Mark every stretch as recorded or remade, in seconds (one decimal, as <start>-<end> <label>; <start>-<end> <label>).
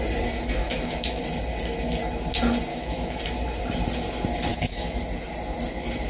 0.0-0.6 recorded; 0.6-1.2 remade; 1.2-2.7 recorded; 2.7-3.2 remade; 3.2-4.5 recorded; 4.5-5.0 remade; 5.0-6.1 recorded